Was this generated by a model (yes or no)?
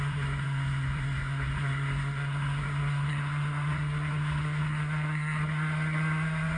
yes